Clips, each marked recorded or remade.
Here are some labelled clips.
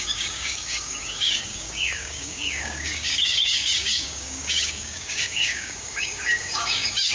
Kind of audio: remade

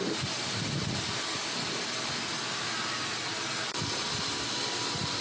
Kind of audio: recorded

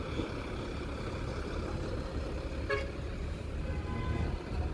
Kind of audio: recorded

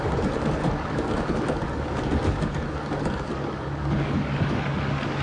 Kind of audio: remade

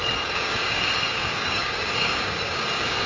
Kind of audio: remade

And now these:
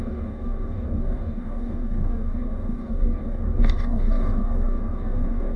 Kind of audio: remade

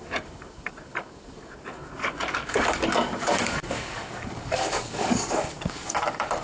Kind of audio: remade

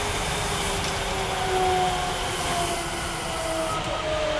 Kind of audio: recorded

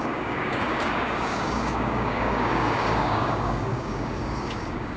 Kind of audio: remade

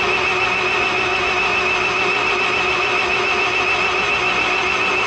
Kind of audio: recorded